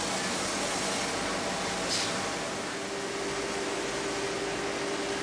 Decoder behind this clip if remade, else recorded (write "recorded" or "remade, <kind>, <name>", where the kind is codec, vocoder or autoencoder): recorded